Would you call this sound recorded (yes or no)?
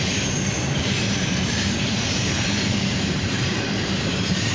no